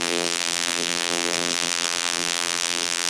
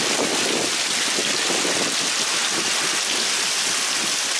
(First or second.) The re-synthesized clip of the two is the first